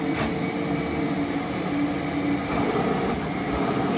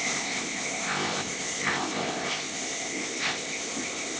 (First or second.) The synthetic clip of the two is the second